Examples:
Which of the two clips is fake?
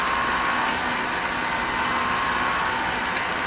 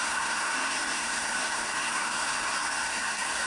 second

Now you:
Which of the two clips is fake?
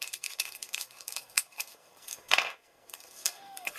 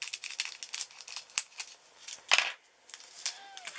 first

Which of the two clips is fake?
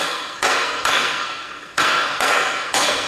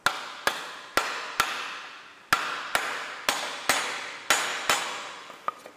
first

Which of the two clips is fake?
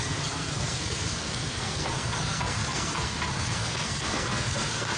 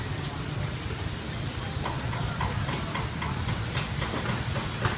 first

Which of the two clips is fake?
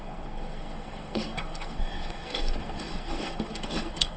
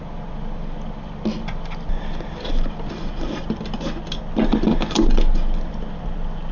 first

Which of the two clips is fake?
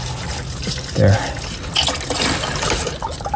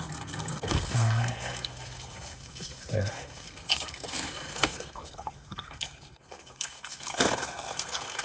second